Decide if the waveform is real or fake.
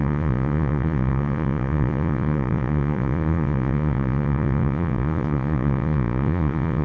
fake